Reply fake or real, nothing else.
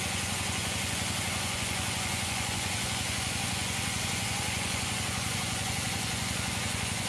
fake